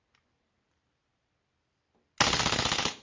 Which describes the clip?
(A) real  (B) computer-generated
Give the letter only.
A